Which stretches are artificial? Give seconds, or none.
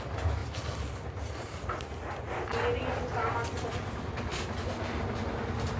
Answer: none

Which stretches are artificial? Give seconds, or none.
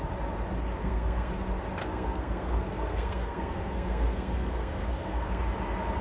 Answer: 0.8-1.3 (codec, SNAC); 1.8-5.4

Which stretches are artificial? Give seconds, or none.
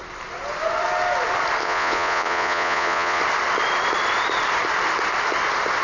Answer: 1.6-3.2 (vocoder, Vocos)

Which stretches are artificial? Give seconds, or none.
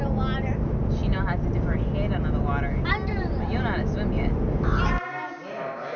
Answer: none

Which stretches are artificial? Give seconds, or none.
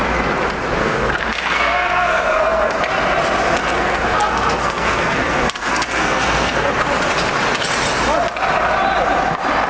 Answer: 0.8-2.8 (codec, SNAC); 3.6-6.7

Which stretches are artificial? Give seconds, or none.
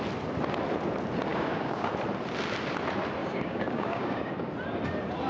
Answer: 1.3-1.9 (codec, DAC); 3.2-4.3